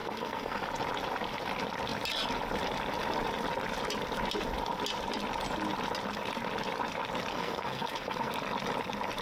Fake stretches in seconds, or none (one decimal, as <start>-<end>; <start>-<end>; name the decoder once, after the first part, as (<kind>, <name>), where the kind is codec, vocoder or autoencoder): 0.0-0.6 (codec, SNAC); 7.3-8.3